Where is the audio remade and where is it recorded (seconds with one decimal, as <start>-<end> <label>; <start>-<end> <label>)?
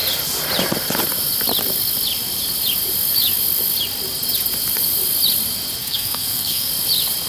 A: 0.0-5.8 recorded; 5.8-6.7 remade; 6.7-7.3 recorded